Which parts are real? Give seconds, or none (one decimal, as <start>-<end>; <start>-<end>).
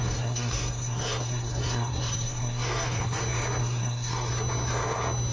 3.2-3.6; 4.3-5.3